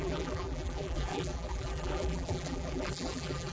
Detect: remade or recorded remade